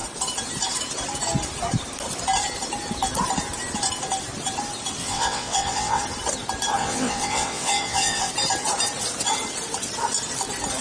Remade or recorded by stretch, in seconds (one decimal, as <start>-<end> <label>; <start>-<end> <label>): 0.0-5.0 recorded; 5.0-6.0 remade; 6.0-6.8 recorded; 6.8-8.3 remade; 8.3-10.8 recorded

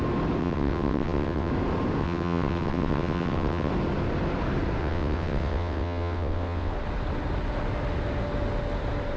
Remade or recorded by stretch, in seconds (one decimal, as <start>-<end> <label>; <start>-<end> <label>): 0.0-0.4 recorded; 0.4-1.5 remade; 1.5-2.0 recorded; 2.0-3.7 remade; 3.7-4.8 recorded; 4.8-6.7 remade; 6.7-9.2 recorded

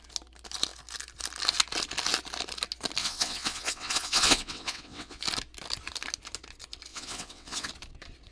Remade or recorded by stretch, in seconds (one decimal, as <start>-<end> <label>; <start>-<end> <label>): 0.0-3.0 recorded; 3.0-5.2 remade; 5.2-6.9 recorded; 6.9-7.7 remade; 7.7-8.3 recorded

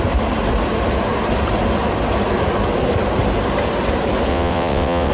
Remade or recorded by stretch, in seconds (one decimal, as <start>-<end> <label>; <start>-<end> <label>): 0.0-4.3 recorded; 4.3-5.1 remade

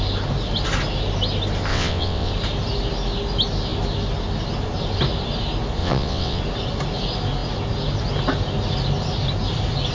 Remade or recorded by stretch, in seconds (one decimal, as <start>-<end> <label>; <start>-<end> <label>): 0.0-1.7 recorded; 1.7-2.3 remade; 2.3-5.8 recorded; 5.8-6.4 remade; 6.4-9.9 recorded

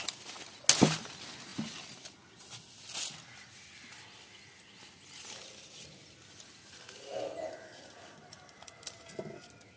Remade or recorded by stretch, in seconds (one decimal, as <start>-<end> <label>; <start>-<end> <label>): 0.0-9.8 recorded

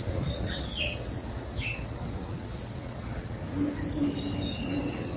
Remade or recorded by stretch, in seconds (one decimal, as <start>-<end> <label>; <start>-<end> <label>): 0.0-3.4 remade; 3.4-4.8 recorded; 4.8-5.2 remade